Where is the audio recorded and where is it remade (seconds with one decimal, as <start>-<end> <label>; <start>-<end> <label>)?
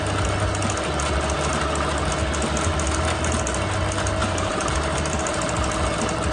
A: 0.0-4.2 recorded; 4.2-5.2 remade; 5.2-6.3 recorded